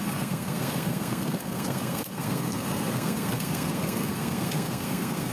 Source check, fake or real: fake